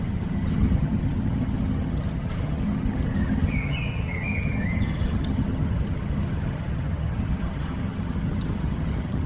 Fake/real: fake